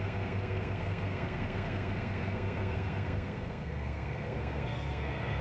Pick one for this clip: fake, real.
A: fake